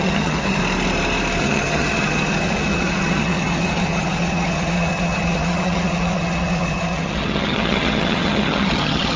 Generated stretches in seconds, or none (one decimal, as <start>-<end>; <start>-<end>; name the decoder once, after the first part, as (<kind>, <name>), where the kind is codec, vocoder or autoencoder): 0.0-0.6 (vocoder, HiFi-GAN); 1.4-9.2